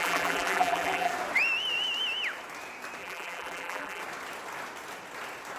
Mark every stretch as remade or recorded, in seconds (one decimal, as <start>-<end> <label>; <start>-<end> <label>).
0.0-1.1 remade; 1.1-3.0 recorded; 3.0-4.0 remade; 4.0-5.6 recorded